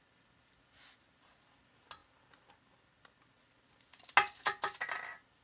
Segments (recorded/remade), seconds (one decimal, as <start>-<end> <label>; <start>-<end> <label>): 0.0-5.4 recorded